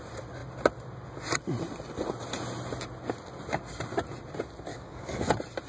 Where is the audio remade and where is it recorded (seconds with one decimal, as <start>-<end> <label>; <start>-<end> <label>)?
0.0-4.7 recorded; 4.7-5.3 remade; 5.3-5.7 recorded